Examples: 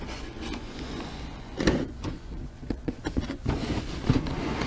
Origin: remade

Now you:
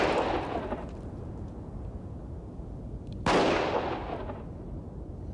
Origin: recorded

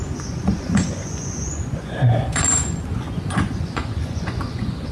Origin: remade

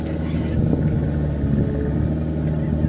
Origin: recorded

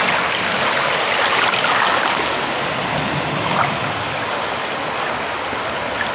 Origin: recorded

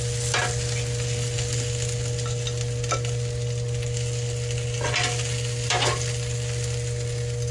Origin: recorded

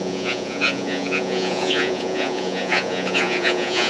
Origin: remade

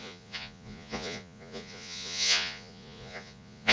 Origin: remade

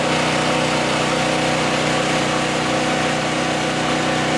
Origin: recorded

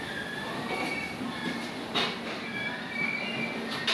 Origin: recorded